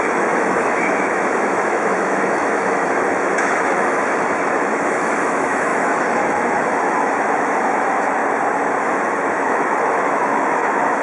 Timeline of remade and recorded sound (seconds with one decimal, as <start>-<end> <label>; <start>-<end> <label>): 0.0-8.2 remade; 8.2-8.8 recorded; 8.8-11.0 remade